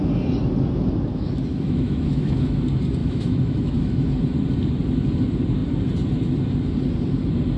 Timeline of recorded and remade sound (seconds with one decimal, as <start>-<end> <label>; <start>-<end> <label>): 0.0-1.1 recorded; 1.1-2.6 remade; 2.6-3.0 recorded; 3.0-4.1 remade; 4.1-7.6 recorded